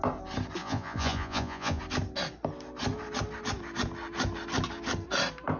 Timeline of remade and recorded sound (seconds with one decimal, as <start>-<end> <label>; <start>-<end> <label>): 0.0-0.6 recorded; 0.6-1.8 remade; 1.8-5.6 recorded